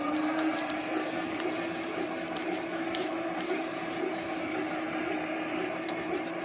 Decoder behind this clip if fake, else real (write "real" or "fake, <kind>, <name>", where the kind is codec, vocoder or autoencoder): fake, vocoder, BigVGAN v2